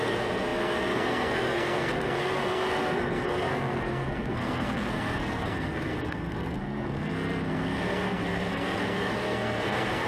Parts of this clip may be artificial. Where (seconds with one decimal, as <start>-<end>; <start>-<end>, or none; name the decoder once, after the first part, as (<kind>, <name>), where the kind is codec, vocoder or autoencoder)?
0.0-10.1 (codec, SNAC)